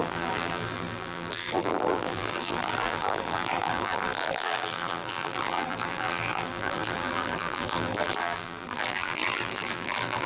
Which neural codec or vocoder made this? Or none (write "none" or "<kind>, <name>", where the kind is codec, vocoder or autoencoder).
vocoder, BigVGAN v2